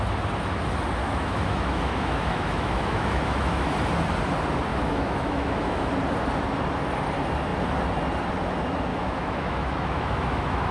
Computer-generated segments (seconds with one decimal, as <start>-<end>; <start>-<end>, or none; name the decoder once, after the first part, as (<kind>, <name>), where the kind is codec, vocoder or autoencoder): 1.0-3.7 (autoencoder, DAC-VAE); 4.7-5.9; 8.9-10.7